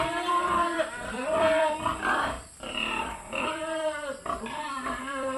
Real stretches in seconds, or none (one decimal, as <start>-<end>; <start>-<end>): none